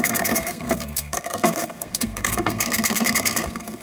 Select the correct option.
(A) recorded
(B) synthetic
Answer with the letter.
B